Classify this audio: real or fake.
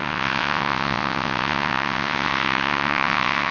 fake